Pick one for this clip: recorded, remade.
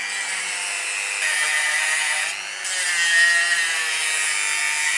recorded